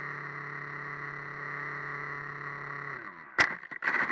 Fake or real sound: real